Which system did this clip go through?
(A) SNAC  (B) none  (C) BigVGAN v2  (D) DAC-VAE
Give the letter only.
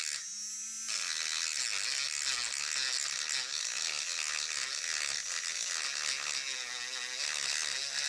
B